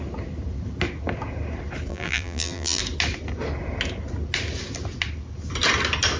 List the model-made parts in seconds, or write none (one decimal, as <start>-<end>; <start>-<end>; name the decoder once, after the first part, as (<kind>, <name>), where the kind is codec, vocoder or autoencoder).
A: 1.9-2.8 (vocoder, BigVGAN v2)

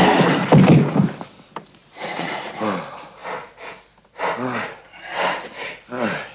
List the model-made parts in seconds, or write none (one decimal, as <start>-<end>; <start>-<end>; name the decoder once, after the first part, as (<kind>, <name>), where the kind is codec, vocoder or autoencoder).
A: 1.8-2.5 (vocoder, Vocos)